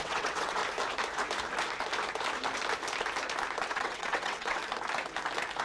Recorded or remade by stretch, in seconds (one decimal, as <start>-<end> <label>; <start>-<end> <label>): 0.0-0.6 remade; 0.6-3.7 recorded; 3.7-4.6 remade; 4.6-5.6 recorded